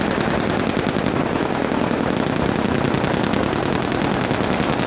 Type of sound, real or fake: real